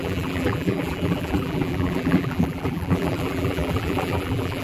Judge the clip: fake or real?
fake